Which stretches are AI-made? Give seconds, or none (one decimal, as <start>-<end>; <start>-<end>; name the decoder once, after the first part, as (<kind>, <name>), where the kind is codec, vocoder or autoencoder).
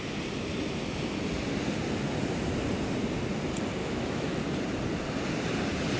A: 3.8-4.4 (autoencoder, DAC-VAE)